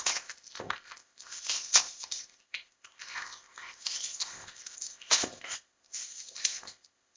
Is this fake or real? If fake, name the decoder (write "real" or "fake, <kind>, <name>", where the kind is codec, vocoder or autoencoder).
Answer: fake, codec, ZipCodec